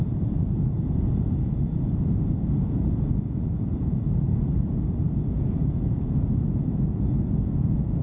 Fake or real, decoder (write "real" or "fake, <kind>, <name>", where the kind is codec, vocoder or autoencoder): fake, vocoder, Vocos